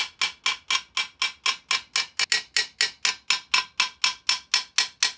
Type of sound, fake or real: real